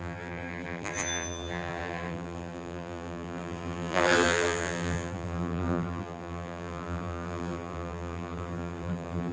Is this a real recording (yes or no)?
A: no